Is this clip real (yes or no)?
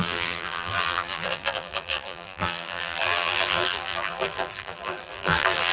no